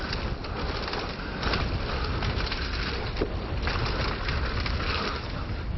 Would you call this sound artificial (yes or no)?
no